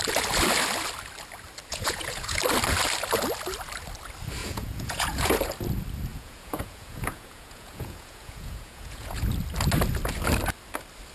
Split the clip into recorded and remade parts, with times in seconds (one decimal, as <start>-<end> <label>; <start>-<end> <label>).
0.0-1.7 recorded; 1.7-2.4 remade; 2.4-4.4 recorded; 4.4-5.4 remade; 5.4-6.1 recorded; 6.1-9.3 remade; 9.3-11.1 recorded